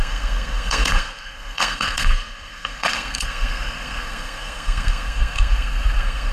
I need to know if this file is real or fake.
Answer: fake